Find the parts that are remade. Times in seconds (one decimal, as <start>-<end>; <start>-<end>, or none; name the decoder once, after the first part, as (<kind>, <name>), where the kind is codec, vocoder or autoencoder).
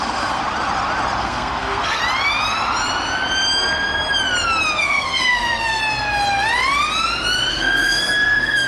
0.0-0.4 (codec, SNAC); 1.2-2.0; 4.8-5.8; 7.5-8.7